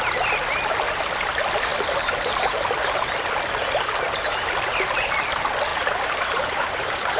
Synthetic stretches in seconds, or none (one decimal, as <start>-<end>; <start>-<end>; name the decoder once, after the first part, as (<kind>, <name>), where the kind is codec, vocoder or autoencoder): 5.7-7.2 (vocoder, BigVGAN v2)